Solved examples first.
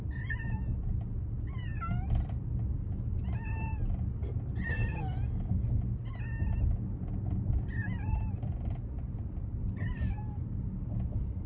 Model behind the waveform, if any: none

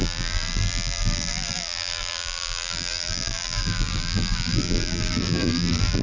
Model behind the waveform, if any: vocoder, BigVGAN v2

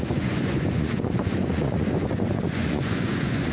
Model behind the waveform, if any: vocoder, Vocos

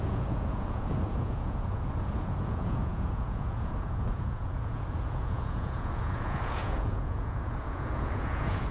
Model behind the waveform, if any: vocoder, Vocos